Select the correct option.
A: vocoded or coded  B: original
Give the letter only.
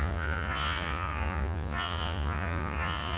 A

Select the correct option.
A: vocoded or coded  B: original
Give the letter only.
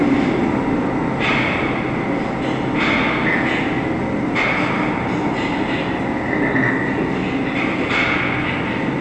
B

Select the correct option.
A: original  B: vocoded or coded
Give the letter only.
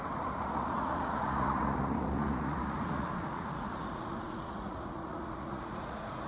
B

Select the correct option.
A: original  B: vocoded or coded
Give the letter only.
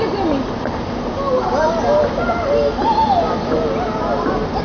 A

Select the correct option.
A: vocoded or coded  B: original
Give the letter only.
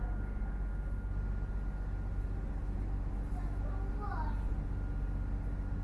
B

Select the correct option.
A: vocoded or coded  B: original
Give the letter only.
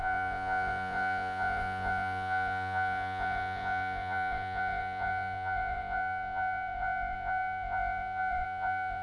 A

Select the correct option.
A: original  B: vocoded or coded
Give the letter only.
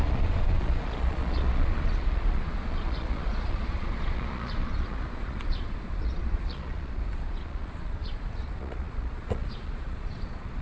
B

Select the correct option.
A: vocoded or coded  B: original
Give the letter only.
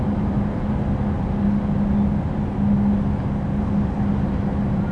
B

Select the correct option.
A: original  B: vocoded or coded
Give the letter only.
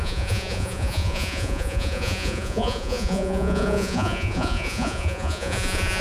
B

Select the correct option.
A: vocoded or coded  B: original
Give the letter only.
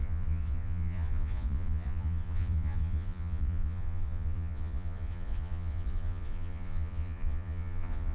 A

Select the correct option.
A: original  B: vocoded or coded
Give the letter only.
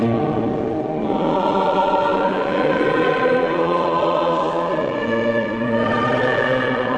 B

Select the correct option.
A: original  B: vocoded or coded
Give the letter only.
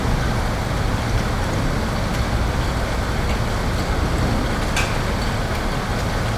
A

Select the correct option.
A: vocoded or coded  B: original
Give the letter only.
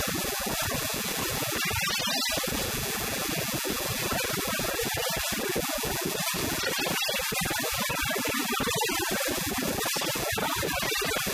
B